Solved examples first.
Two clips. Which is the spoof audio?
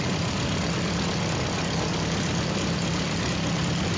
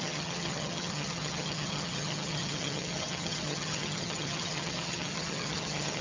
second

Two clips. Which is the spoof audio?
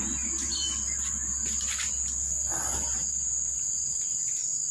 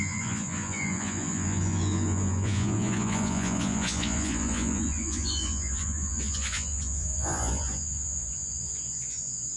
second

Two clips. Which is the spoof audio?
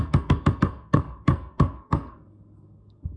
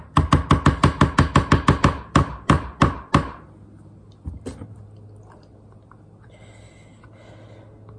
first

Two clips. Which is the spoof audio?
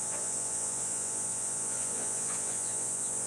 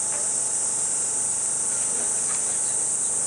first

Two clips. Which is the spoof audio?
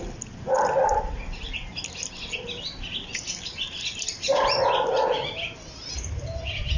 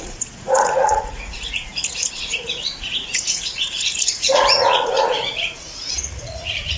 second